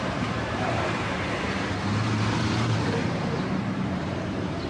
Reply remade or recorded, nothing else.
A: remade